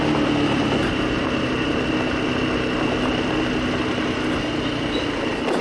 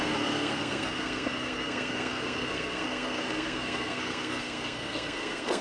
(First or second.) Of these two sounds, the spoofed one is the second